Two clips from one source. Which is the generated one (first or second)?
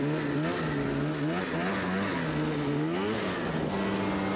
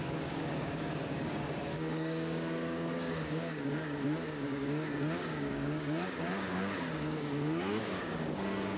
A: second